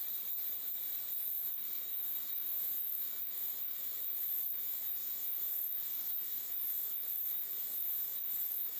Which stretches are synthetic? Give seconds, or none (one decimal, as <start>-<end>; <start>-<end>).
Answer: 1.3-8.8